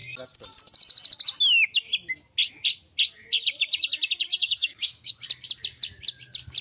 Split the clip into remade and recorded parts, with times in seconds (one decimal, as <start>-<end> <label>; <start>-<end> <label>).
0.0-4.3 recorded; 4.3-5.1 remade; 5.1-6.6 recorded